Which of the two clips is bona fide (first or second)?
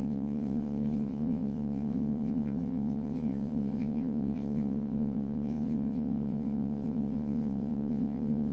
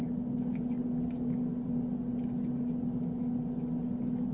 second